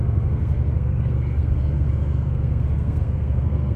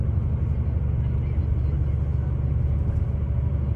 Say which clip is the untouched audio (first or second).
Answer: second